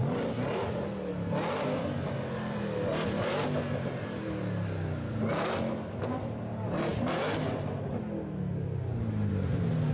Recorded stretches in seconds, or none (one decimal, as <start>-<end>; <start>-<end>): 0.0-9.9